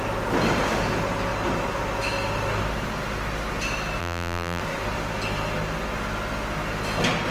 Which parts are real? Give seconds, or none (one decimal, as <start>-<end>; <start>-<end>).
0.0-4.0; 4.6-7.3